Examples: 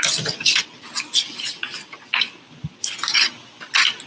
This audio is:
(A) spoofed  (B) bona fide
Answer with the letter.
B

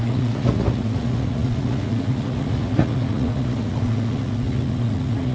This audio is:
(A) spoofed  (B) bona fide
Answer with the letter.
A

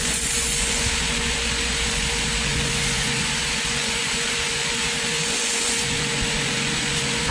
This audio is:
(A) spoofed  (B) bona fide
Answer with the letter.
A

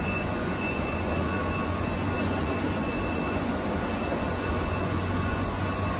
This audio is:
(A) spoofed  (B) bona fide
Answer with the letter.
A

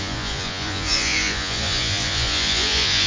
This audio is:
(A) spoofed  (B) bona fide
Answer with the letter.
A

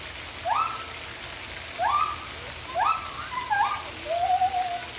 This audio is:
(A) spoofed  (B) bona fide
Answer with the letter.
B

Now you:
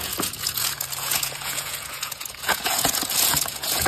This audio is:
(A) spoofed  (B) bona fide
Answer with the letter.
A